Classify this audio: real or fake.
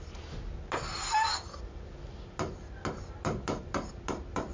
real